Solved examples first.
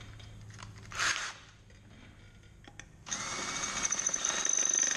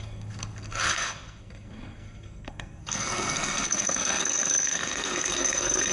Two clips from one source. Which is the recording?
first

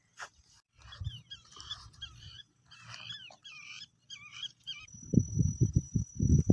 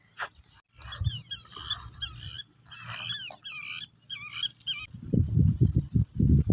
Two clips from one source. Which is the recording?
second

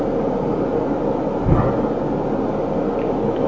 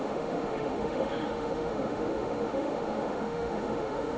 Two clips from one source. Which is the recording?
first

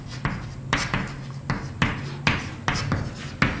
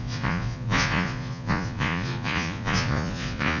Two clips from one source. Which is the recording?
first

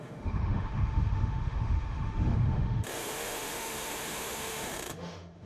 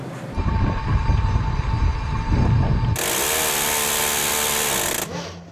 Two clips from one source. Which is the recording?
second